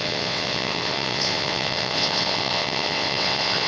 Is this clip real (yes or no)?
no